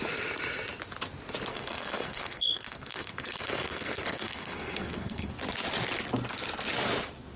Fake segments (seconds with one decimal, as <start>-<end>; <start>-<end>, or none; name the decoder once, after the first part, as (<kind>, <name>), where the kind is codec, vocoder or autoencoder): 1.5-5.3 (codec, SNAC)